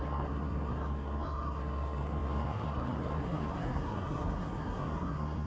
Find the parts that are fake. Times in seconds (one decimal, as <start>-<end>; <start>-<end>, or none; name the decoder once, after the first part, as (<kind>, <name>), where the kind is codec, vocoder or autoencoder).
0.0-5.5 (codec, SNAC)